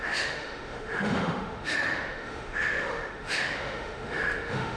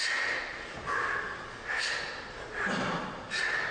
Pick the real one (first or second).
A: second